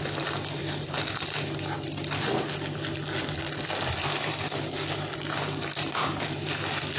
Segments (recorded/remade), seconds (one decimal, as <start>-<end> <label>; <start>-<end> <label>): 0.0-7.0 recorded